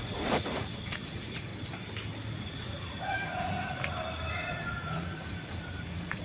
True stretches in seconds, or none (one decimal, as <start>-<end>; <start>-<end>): 1.5-2.3; 3.7-4.3